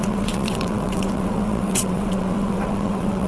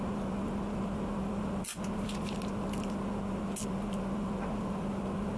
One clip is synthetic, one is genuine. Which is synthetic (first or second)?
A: first